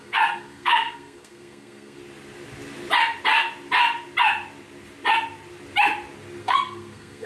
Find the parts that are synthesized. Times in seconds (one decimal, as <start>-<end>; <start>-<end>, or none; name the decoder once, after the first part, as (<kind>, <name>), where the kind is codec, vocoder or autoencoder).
0.0-2.0 (codec, SNAC); 6.4-7.3